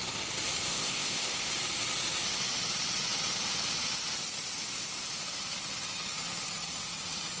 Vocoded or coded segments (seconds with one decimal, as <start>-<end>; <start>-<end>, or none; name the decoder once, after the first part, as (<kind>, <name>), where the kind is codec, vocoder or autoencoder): 0.7-1.5 (codec, ZipCodec)